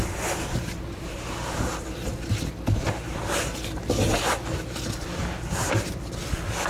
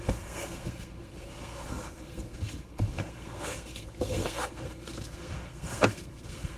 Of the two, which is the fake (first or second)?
second